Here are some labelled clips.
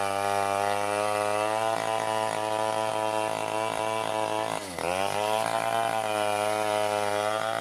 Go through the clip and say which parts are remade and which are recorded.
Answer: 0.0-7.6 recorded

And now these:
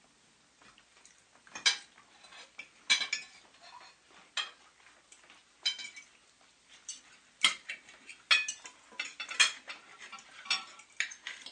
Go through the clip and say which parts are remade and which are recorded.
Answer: 0.0-11.5 recorded

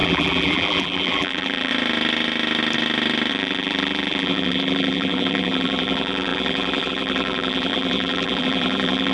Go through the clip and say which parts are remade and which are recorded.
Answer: 0.0-1.7 remade; 1.7-3.3 recorded; 3.3-9.1 remade

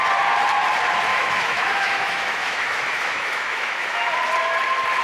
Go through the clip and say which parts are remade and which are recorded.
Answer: 0.0-1.1 recorded; 1.1-4.1 remade; 4.1-5.0 recorded